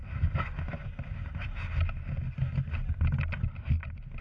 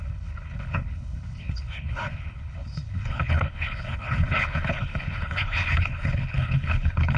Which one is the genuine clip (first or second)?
first